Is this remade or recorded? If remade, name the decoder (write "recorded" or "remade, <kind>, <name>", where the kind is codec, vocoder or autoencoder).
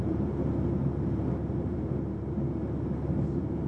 recorded